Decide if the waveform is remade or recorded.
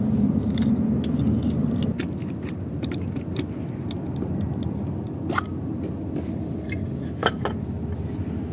recorded